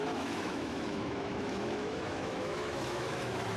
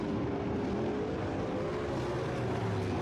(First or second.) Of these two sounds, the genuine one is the second